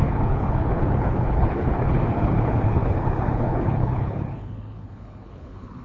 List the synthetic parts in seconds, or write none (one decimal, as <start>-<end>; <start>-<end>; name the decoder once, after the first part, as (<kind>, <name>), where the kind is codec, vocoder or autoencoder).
0.0-5.8 (codec, HILCodec)

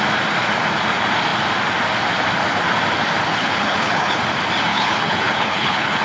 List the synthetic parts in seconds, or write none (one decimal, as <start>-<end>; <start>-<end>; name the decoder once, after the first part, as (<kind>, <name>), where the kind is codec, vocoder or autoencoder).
3.3-4.2 (codec, HILCodec); 4.7-6.0

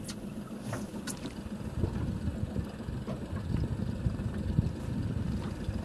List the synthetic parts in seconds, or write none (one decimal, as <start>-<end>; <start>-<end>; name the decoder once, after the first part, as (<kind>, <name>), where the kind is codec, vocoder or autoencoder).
none

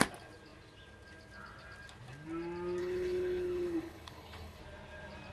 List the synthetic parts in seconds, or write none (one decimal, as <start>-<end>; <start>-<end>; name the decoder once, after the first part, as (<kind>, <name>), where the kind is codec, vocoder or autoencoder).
2.8-4.6 (codec, HILCodec)